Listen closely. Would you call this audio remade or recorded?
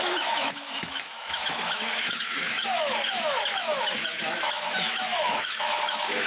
remade